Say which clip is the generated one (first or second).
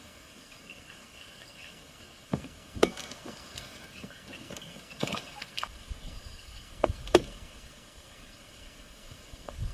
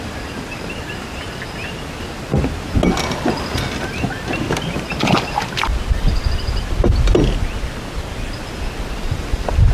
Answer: first